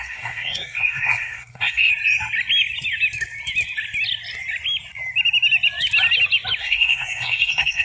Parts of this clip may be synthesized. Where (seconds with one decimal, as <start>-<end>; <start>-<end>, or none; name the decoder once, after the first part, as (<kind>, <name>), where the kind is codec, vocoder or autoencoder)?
0.0-1.9 (codec, SNAC); 6.6-7.8